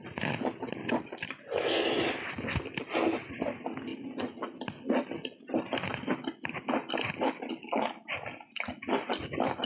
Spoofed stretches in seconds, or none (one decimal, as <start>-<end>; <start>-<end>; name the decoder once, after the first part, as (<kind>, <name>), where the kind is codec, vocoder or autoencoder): none